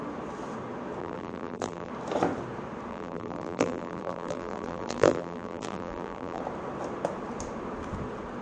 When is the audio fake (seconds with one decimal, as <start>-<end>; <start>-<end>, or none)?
1.0-1.9; 2.9-6.4